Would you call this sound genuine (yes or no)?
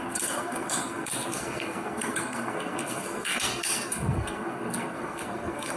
no